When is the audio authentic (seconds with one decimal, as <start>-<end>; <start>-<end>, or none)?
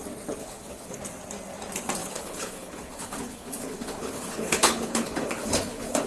0.0-0.4; 1.0-2.0